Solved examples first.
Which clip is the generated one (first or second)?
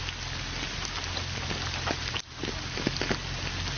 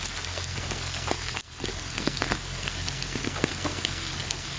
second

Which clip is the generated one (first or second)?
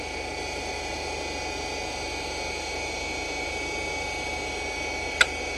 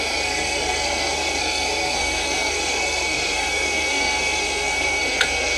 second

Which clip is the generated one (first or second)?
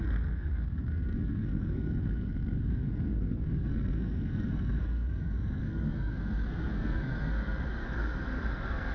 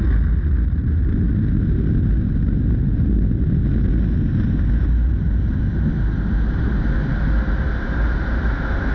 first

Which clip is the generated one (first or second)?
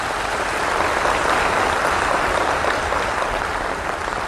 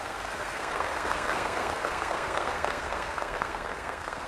second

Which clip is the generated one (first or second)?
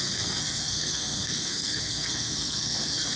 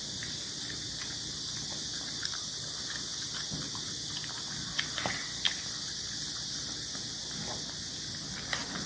first